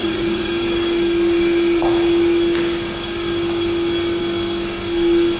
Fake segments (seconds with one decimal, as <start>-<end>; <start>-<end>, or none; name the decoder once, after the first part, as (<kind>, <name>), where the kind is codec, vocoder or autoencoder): 0.0-0.5 (vocoder, Vocos)